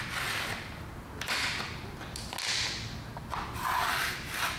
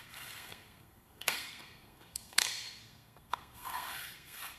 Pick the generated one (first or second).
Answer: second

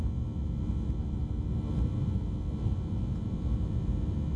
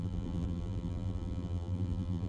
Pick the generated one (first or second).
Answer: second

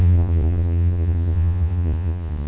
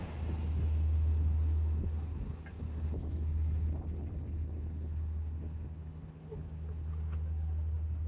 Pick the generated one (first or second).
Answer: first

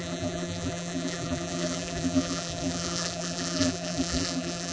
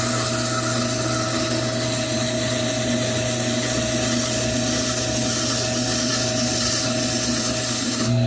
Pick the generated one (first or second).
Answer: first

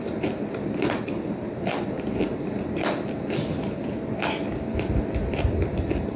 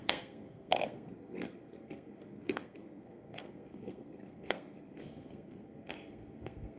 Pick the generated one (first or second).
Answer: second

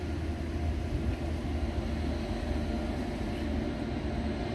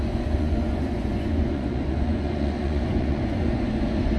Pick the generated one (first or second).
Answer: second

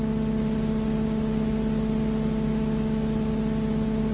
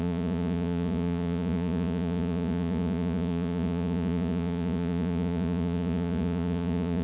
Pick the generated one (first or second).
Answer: second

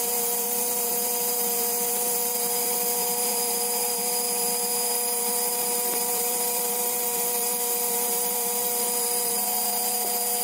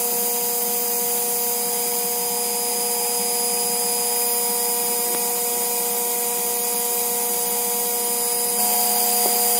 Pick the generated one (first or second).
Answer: first